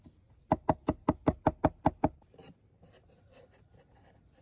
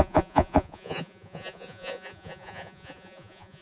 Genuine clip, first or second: first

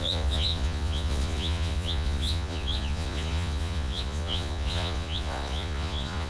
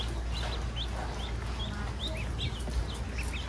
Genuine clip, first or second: second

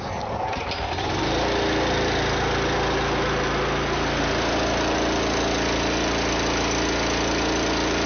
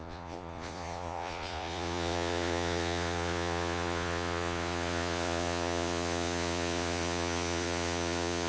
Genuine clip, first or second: first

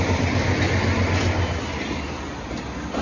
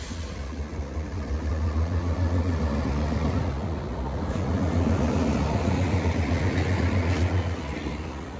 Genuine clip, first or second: first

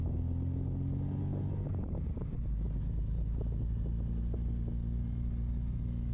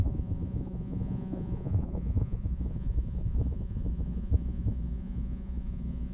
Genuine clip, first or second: first